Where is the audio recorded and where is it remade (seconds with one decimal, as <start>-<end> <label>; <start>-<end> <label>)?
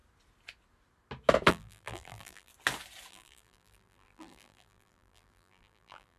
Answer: 0.0-1.5 recorded; 1.5-2.5 remade; 2.5-3.1 recorded; 3.1-6.2 remade